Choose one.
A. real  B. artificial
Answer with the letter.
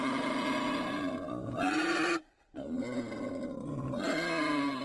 A